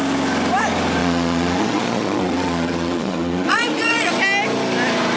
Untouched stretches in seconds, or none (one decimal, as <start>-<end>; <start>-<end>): 0.0-1.0; 4.1-5.2